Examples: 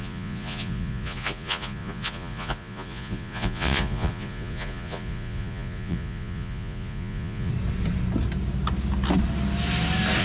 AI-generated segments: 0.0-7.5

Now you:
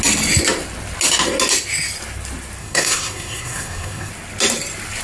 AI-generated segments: 2.6-4.1

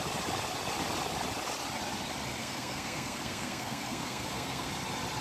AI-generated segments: 2.4-4.7

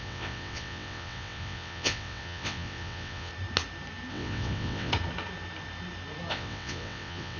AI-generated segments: 0.0-3.3; 4.1-4.9; 6.3-7.4

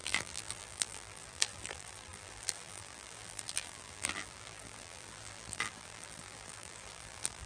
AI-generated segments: 0.0-7.5

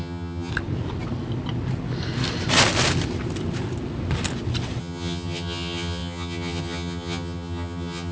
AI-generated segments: 0.0-0.5; 4.8-8.1

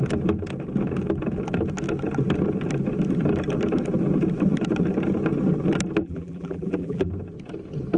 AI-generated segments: 6.0-7.1

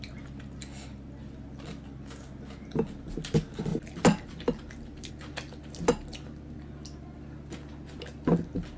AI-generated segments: none